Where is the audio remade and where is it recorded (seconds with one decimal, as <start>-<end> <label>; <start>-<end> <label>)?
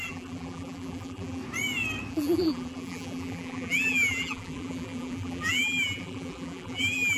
0.0-1.4 remade; 1.4-2.1 recorded; 2.1-7.2 remade